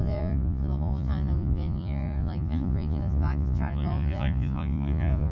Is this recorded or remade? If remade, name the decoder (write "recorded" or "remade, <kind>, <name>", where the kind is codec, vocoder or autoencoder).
remade, vocoder, Vocos